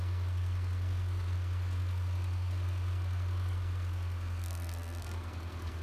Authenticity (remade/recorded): remade